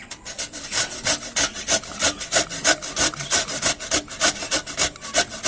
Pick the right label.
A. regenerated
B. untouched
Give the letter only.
B